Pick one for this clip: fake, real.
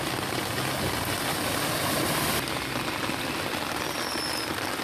real